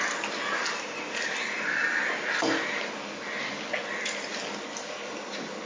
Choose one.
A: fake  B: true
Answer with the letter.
B